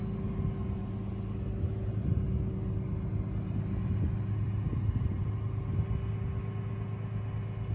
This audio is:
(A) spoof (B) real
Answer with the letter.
B